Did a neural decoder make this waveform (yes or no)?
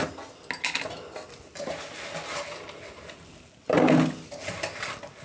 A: no